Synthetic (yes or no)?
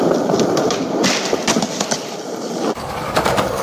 yes